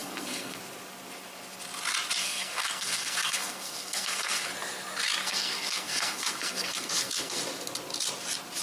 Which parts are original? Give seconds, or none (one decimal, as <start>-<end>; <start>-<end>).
0.6-2.2; 4.5-5.2; 7.4-8.6